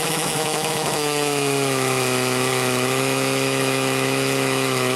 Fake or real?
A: fake